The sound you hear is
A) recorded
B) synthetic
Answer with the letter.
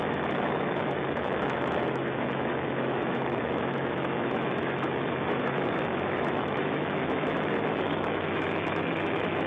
B